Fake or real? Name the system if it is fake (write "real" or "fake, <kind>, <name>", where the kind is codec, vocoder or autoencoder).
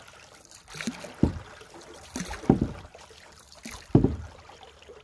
real